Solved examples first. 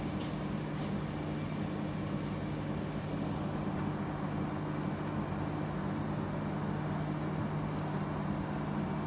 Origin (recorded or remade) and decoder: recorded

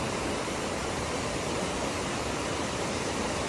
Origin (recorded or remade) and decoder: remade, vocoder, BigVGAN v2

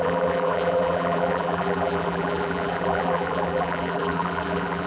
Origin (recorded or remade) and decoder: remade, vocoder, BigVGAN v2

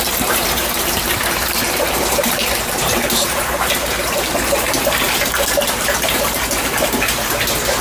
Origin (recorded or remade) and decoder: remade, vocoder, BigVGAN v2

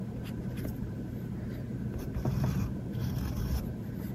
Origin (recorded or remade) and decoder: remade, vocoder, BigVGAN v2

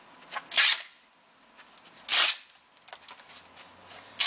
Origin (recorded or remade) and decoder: recorded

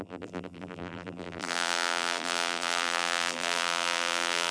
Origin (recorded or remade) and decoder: remade, vocoder, BigVGAN v2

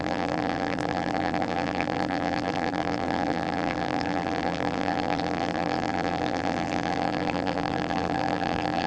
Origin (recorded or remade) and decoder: remade, vocoder, BigVGAN v2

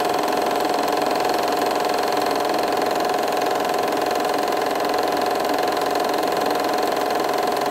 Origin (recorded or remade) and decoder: remade, vocoder, BigVGAN v2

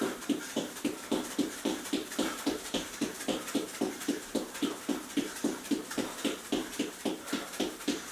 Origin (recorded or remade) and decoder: remade, vocoder, BigVGAN v2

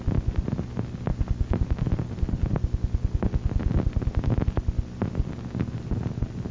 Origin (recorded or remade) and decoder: recorded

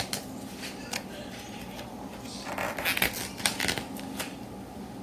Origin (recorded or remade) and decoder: recorded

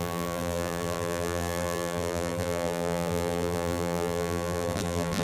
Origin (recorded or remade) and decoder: remade, vocoder, BigVGAN v2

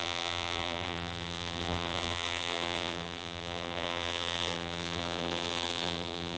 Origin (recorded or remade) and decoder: remade, vocoder, BigVGAN v2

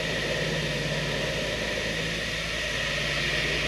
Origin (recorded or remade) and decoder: recorded